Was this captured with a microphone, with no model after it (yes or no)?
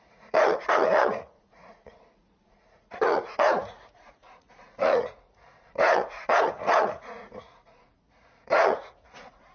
no